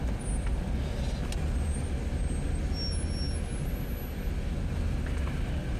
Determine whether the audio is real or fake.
real